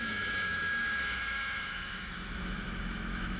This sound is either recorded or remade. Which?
remade